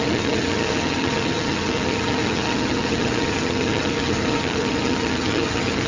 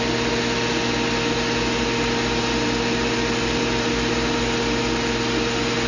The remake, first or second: first